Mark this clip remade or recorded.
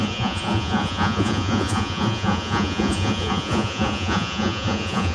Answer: remade